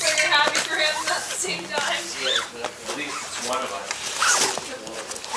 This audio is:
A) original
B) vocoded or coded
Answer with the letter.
A